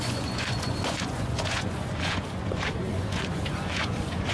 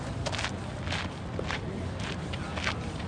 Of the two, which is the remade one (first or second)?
first